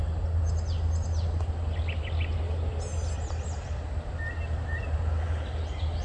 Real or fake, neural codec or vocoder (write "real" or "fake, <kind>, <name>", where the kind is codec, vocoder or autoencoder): real